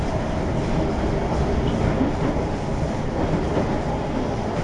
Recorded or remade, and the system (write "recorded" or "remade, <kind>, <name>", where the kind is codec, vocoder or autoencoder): recorded